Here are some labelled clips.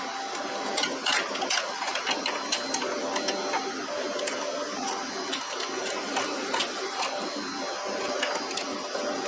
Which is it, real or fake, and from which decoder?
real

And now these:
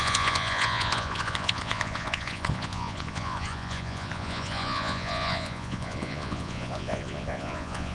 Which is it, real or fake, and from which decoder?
fake, vocoder, Vocos